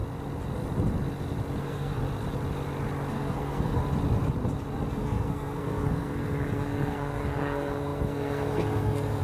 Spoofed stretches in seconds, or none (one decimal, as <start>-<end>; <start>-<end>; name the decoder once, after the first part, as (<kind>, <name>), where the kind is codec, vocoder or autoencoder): 1.6-2.0 (codec, SNAC); 3.1-3.8; 4.9-9.2